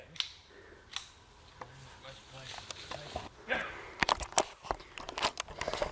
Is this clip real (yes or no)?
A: yes